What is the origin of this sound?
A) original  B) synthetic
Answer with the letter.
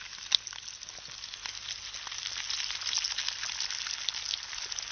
A